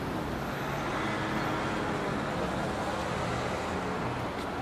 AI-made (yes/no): no